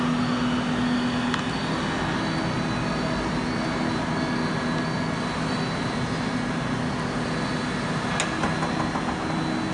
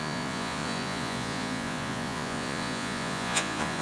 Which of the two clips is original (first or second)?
first